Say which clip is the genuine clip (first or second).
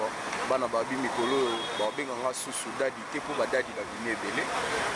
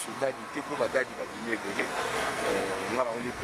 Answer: first